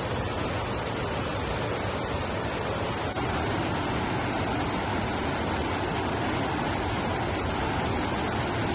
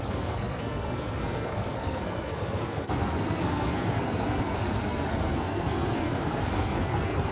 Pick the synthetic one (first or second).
second